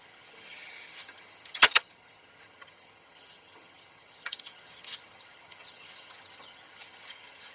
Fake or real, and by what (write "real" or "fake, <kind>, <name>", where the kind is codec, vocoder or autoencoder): fake, vocoder, HiFi-GAN